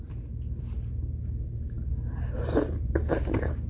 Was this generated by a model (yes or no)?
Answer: no